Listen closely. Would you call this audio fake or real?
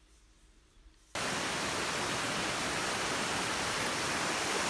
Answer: real